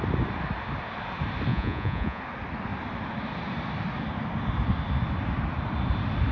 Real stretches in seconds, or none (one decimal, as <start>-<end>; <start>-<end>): 0.0-1.5; 2.2-6.3

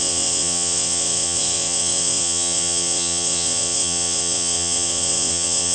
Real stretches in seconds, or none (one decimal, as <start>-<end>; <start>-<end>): none

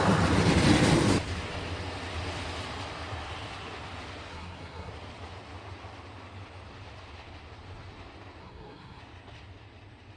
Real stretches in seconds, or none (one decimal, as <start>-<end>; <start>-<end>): 0.0-4.3; 4.9-8.4; 9.0-10.2